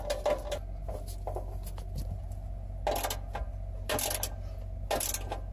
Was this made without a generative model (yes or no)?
yes